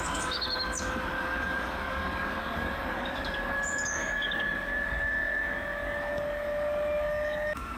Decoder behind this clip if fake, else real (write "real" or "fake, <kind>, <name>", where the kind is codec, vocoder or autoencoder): fake, codec, DAC